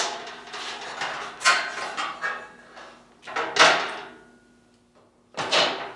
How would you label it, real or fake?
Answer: real